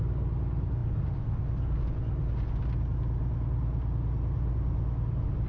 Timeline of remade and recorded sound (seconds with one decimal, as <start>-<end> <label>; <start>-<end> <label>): 0.0-5.5 recorded